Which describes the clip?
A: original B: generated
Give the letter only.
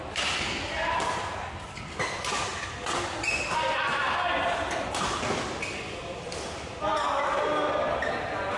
A